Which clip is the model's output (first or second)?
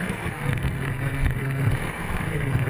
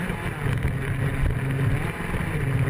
first